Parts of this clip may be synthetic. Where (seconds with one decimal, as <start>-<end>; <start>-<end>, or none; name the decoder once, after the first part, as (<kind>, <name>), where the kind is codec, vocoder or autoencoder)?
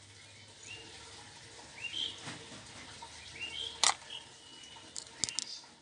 none